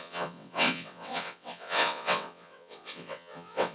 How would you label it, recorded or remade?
remade